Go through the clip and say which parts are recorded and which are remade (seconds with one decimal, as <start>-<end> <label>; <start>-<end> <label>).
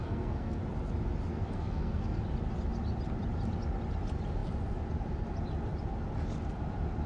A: 0.0-0.6 remade; 0.6-1.3 recorded; 1.3-2.2 remade; 2.2-7.1 recorded